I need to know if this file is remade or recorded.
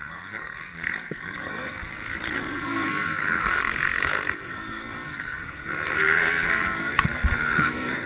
remade